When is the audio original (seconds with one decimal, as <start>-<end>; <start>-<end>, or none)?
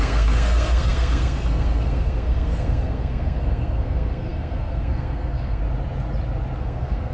5.6-6.6